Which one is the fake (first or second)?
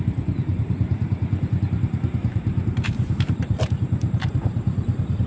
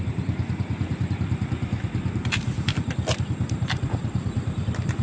first